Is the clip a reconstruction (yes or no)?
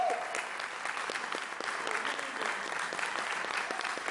no